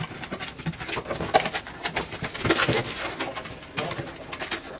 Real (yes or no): yes